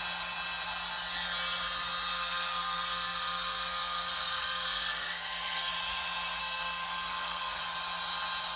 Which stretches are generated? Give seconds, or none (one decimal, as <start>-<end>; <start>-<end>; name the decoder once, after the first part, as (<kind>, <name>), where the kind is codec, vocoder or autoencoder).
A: 2.1-5.7 (codec, SNAC); 6.4-7.6